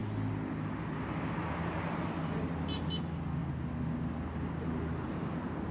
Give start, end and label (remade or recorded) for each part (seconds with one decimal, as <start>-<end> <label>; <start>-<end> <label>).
0.0-5.7 recorded